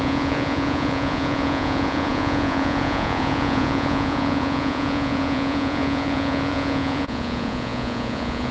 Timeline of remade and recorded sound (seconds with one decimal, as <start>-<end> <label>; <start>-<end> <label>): 0.0-8.5 remade